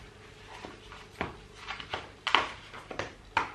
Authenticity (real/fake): real